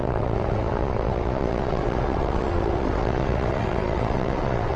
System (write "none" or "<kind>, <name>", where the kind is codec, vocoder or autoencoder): vocoder, WaveNeXt